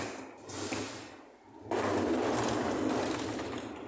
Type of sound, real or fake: real